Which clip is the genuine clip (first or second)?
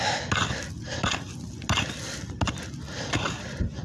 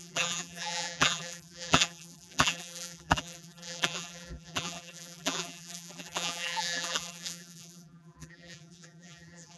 first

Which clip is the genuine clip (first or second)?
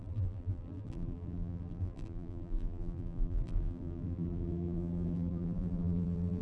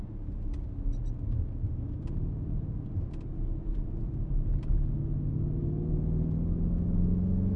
second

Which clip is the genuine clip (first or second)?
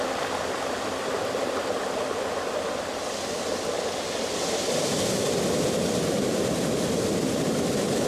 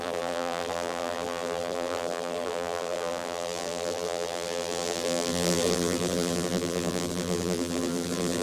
first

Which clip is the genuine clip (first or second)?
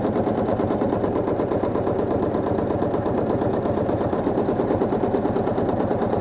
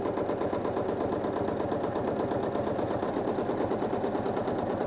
second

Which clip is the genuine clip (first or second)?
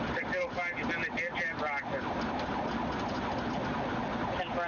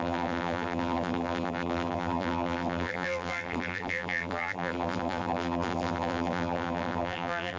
first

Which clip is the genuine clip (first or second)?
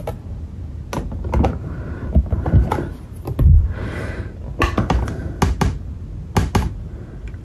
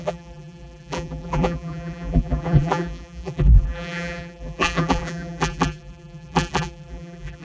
first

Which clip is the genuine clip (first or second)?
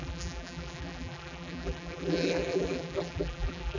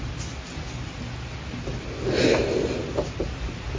second